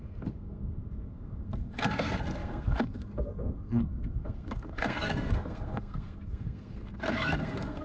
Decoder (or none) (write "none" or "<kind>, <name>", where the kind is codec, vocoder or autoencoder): codec, SNAC